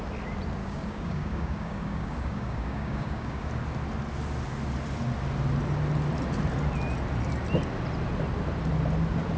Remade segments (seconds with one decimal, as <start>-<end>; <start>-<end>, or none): 0.6-3.5